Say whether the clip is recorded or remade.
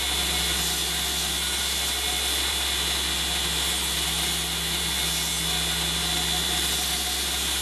recorded